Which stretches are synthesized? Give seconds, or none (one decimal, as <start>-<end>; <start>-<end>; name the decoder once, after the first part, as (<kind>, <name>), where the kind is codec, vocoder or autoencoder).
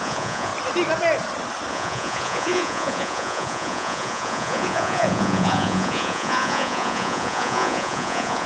0.0-0.5 (vocoder, Vocos); 1.7-8.5